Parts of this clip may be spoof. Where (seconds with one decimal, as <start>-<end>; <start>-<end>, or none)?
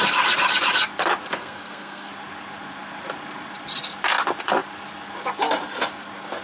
1.3-2.1